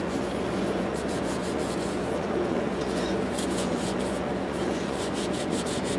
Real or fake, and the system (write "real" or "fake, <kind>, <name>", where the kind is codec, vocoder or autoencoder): fake, vocoder, Vocos